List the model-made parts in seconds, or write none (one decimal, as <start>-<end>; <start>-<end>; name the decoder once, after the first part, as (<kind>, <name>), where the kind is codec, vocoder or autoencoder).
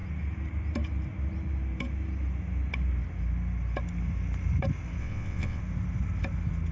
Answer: 5.0-5.6 (vocoder, WaveNeXt)